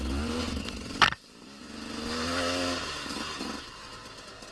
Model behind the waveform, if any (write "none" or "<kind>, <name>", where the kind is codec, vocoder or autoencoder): none